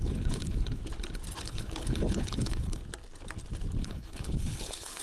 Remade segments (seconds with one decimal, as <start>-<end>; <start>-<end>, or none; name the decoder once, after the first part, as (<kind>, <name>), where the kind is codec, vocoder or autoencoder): 0.0-0.8 (codec, HILCodec); 1.4-2.8; 3.8-5.0